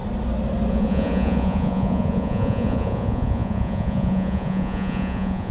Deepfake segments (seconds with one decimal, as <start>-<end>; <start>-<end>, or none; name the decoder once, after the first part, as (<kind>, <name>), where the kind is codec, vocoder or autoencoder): 0.7-5.5 (vocoder, Vocos)